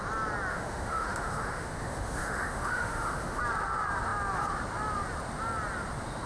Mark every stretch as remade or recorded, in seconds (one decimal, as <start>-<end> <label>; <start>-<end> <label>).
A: 0.0-0.5 recorded; 0.5-3.4 remade; 3.4-6.3 recorded